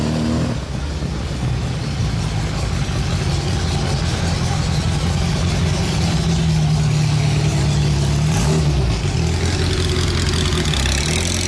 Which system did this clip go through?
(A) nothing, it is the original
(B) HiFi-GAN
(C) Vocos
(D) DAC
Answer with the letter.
A